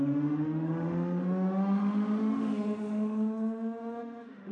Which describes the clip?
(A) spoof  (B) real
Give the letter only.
A